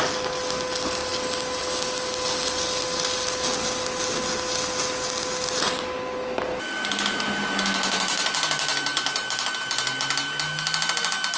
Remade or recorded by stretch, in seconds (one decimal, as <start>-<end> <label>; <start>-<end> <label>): 0.0-11.4 recorded